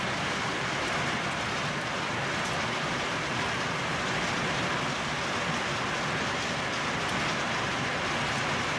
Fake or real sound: real